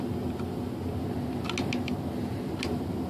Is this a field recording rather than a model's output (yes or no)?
yes